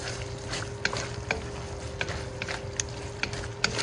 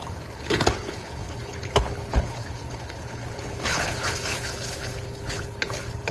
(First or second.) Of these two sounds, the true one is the first